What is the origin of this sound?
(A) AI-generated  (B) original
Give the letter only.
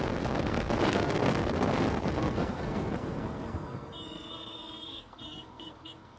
A